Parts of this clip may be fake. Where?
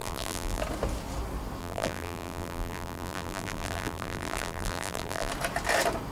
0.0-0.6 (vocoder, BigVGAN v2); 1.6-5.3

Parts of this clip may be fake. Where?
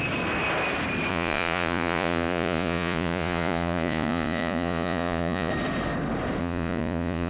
1.1-5.5 (vocoder, Vocos); 6.4-7.3